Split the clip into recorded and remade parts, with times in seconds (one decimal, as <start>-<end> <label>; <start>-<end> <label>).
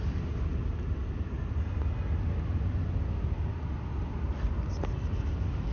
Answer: 0.0-5.7 recorded